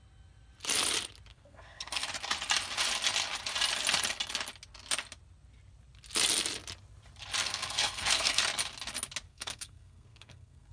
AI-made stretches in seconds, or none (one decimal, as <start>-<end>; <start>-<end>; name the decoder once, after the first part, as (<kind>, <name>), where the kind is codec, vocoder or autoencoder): 1.3-2.1 (codec, SNAC); 7.4-8.4; 9.3-10.7